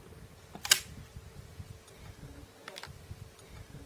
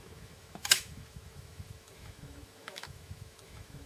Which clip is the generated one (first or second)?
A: second